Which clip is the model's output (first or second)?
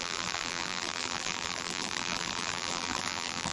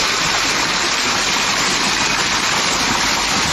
first